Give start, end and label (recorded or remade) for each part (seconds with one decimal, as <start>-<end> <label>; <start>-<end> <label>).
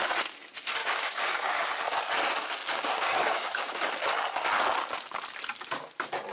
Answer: 0.0-0.8 recorded; 0.8-1.7 remade; 1.7-2.6 recorded; 2.6-3.9 remade; 3.9-6.3 recorded